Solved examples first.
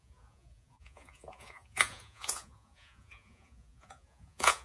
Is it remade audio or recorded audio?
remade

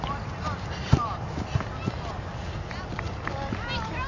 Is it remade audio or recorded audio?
recorded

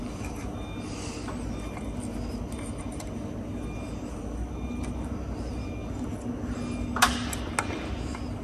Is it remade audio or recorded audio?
recorded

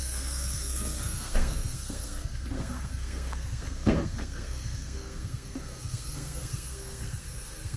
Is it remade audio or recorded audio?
remade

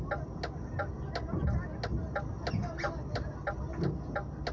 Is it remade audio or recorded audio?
recorded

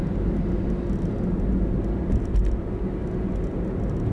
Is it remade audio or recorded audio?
recorded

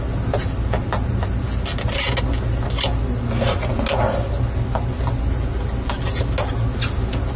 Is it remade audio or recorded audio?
recorded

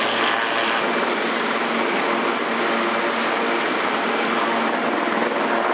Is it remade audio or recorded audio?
recorded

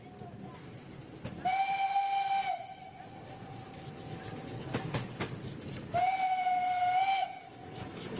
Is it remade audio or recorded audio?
recorded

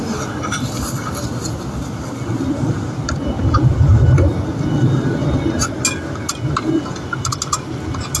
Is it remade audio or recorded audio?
recorded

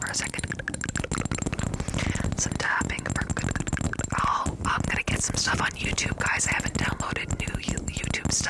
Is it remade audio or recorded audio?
recorded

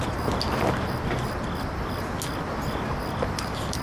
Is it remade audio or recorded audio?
recorded